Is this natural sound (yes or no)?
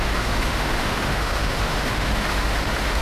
no